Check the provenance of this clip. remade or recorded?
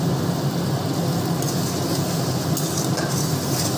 recorded